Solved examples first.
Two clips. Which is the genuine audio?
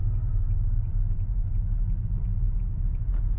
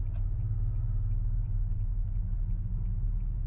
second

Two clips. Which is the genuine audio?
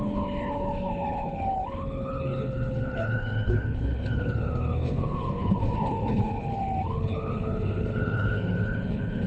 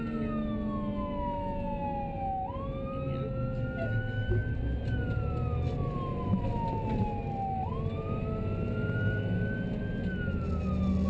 second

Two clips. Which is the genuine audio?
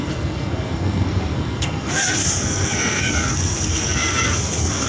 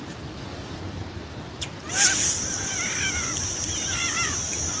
second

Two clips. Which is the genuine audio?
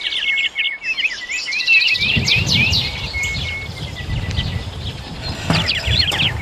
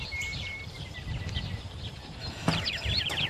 first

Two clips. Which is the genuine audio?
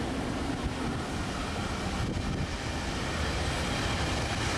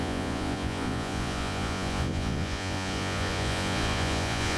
first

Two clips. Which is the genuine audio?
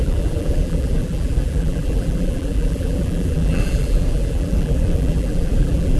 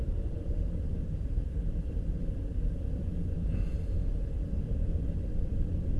second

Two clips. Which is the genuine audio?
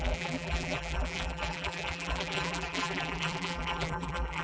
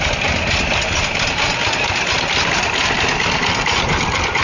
second